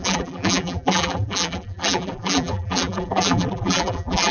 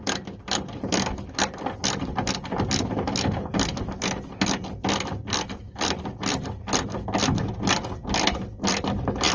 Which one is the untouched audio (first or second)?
second